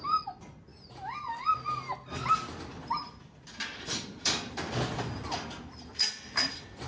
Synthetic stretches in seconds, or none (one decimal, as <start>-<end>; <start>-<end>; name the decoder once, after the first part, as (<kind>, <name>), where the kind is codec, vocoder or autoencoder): 0.0-0.7 (vocoder, BigVGAN v2); 2.6-6.9